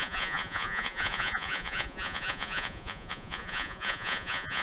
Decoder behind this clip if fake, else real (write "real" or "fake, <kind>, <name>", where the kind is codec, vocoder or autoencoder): fake, vocoder, Vocos